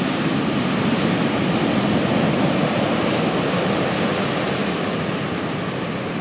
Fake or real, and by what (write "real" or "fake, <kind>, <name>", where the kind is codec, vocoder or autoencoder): real